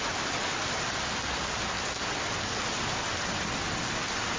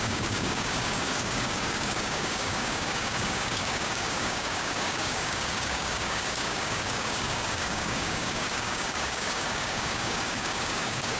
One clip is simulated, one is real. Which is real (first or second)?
first